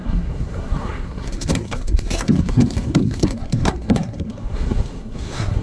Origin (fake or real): fake